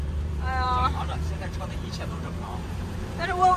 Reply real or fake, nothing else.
fake